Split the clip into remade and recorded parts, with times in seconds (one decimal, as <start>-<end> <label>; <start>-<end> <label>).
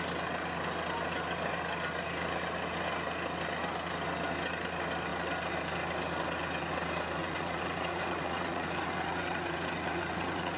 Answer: 0.0-7.2 recorded; 7.2-10.6 remade